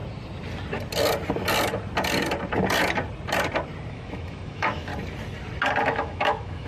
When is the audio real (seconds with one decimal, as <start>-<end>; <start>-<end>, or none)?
0.0-3.9; 4.9-5.8